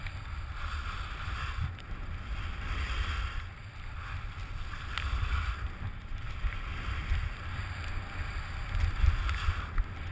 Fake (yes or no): no